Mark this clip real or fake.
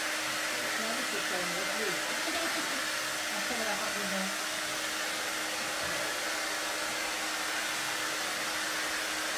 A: real